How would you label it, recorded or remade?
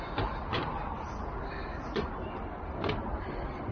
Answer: remade